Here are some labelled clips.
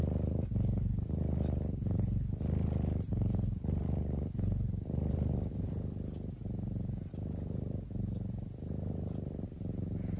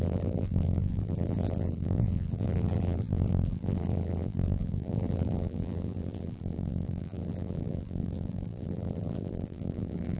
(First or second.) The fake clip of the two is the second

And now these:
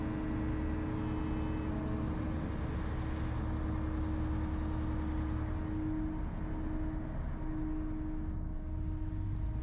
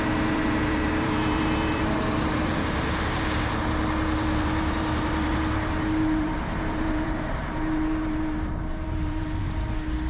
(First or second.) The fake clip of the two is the second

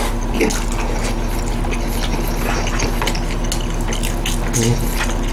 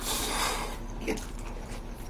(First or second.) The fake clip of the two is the second